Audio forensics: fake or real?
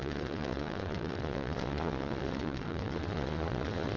fake